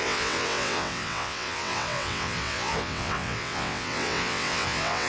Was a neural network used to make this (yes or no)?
yes